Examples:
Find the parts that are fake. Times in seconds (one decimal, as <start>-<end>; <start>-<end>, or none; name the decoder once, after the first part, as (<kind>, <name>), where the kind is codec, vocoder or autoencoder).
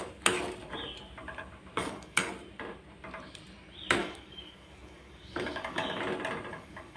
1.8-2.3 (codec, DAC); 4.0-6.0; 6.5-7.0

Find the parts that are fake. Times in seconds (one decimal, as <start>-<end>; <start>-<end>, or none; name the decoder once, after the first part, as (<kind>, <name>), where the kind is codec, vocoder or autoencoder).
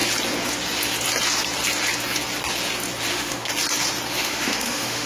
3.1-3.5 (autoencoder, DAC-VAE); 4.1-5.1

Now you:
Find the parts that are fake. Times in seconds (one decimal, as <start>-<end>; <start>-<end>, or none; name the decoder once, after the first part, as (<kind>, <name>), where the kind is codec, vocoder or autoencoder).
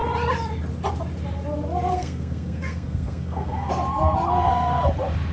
1.9-3.7 (codec, SNAC)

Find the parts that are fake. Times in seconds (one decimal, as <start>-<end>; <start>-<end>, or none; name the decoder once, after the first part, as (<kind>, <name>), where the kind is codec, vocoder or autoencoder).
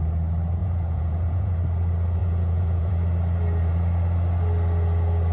0.6-1.5 (vocoder, Vocos); 2.2-2.9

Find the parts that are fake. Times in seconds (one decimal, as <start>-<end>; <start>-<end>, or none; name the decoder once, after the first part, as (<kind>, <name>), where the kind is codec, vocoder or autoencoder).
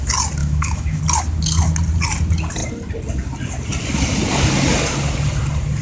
0.4-1.0 (autoencoder, DAC-VAE)